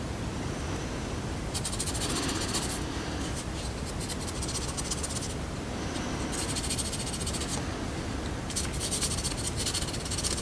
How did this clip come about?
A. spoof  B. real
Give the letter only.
B